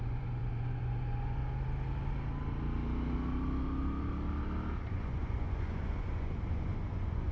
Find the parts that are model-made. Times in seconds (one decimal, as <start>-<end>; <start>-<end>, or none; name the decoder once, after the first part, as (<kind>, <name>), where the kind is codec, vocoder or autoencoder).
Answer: 0.0-1.4 (vocoder, Vocos); 4.9-7.3